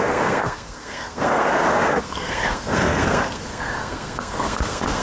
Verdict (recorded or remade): remade